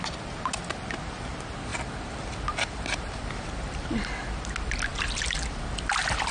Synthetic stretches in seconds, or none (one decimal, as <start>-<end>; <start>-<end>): 1.7-4.1; 4.9-6.3